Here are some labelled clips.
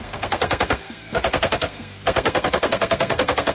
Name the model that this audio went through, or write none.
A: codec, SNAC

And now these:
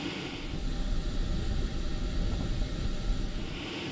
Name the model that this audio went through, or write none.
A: none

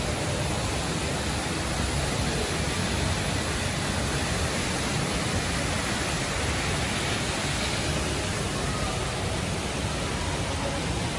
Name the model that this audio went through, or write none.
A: none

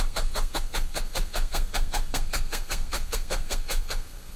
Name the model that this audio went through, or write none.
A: codec, SNAC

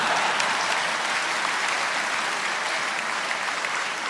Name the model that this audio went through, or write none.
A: none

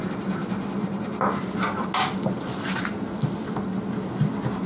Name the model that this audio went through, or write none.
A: none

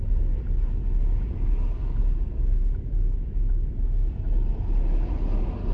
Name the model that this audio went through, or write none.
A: none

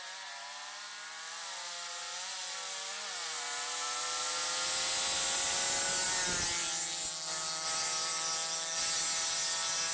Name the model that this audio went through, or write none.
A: none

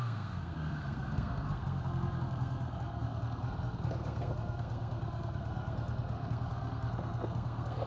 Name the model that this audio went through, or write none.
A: codec, SNAC